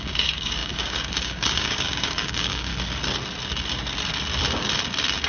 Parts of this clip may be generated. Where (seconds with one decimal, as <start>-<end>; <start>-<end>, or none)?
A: 0.0-2.7